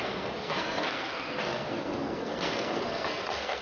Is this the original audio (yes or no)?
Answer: no